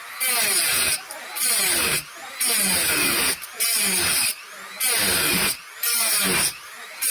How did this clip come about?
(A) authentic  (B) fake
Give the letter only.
B